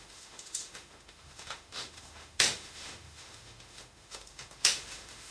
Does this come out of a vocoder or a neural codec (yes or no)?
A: yes